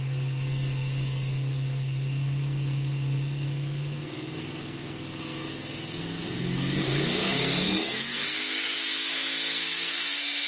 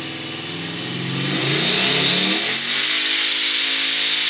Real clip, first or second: second